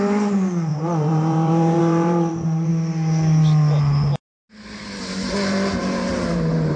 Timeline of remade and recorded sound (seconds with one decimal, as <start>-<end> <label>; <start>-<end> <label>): 0.0-2.7 remade; 2.7-5.0 recorded; 5.0-6.8 remade